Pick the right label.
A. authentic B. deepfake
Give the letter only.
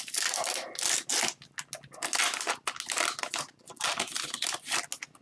A